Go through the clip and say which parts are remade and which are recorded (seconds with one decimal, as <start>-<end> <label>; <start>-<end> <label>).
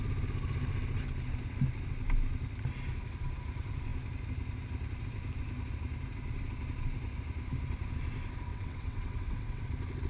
0.0-8.5 recorded; 8.5-9.6 remade; 9.6-10.1 recorded